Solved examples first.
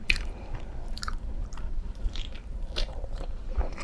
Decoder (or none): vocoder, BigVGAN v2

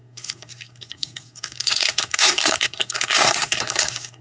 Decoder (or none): codec, SNAC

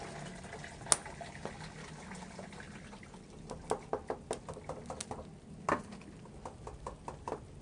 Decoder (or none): none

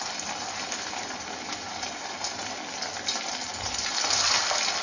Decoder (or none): none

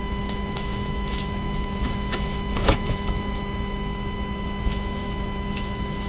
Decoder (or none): autoencoder, DAC-VAE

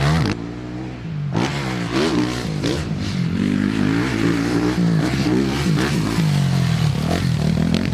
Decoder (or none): none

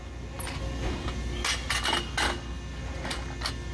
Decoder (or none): none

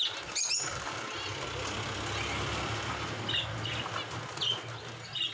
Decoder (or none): none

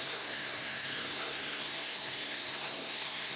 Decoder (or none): codec, SNAC